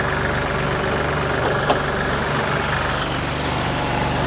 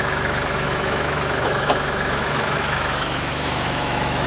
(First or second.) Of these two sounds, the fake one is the second